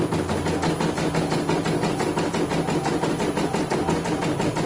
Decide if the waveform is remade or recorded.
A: recorded